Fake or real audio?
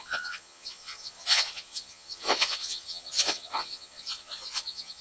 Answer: fake